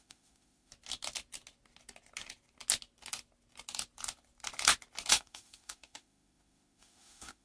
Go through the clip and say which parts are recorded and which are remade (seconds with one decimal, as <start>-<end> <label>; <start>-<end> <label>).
0.0-0.7 remade; 0.7-5.1 recorded; 5.1-7.4 remade